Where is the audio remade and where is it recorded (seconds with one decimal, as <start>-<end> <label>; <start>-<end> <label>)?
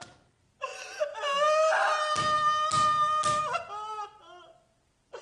0.0-5.2 recorded